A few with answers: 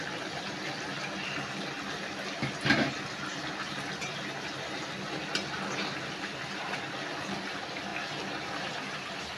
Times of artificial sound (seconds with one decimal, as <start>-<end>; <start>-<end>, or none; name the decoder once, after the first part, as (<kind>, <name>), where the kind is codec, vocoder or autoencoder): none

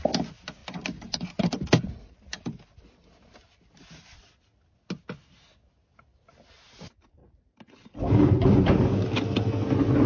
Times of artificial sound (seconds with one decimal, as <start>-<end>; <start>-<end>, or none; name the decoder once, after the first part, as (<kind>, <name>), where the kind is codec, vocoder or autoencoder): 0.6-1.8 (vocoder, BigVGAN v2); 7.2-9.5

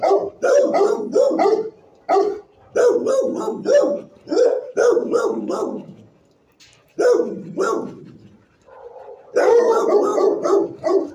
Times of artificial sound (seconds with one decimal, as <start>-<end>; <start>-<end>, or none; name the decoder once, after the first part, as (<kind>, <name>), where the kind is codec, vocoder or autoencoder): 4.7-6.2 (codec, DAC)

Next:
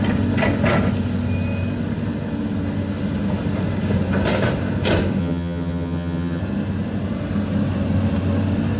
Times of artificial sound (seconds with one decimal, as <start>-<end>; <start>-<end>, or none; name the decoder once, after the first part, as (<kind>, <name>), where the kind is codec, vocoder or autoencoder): 5.2-6.4 (vocoder, HiFi-GAN)